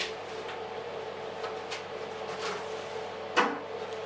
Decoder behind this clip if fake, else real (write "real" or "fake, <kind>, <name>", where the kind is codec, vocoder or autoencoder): real